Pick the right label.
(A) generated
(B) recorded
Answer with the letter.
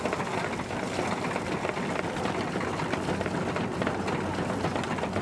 B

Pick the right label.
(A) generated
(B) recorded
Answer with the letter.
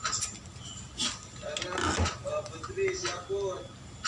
B